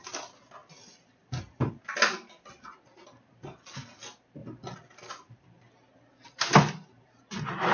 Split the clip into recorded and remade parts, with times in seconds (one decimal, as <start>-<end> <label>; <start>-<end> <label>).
0.0-0.6 recorded; 0.6-1.7 remade; 1.7-4.4 recorded; 4.4-5.1 remade; 5.1-7.7 recorded